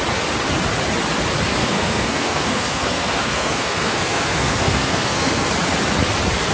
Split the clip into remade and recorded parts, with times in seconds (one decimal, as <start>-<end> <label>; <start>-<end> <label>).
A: 0.0-1.6 recorded; 1.6-5.5 remade; 5.5-6.5 recorded